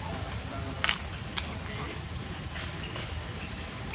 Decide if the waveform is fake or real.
real